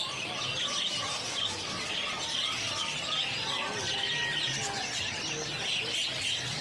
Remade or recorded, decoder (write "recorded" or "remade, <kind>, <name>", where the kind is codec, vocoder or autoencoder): recorded